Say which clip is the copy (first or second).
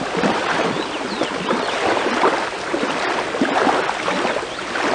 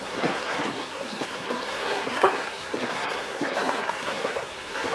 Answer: second